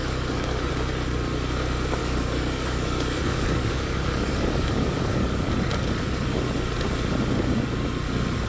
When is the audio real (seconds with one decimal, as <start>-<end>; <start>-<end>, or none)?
0.7-2.0; 5.5-8.5